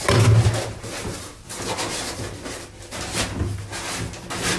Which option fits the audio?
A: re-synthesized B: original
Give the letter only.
B